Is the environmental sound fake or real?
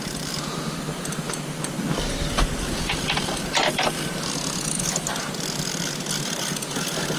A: real